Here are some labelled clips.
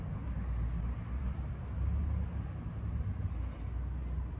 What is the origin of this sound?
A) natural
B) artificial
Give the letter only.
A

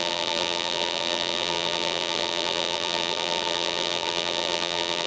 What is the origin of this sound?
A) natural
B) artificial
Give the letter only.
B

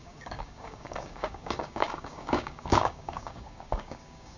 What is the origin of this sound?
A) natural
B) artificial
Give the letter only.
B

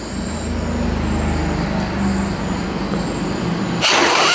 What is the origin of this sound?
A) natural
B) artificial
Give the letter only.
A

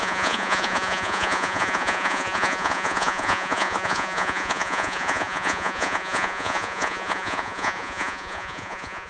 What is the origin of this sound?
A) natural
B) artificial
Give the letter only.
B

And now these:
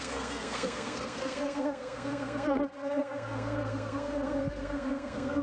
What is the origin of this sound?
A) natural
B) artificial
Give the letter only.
B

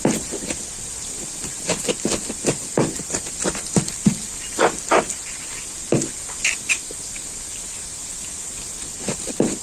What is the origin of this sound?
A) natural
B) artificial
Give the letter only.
A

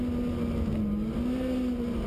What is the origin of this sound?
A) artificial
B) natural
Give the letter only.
B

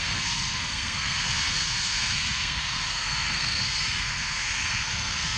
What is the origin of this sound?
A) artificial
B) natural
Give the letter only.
A